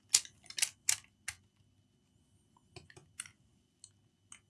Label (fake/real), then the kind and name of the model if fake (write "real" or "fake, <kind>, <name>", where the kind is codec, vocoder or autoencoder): real